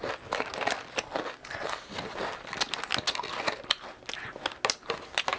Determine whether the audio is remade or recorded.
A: recorded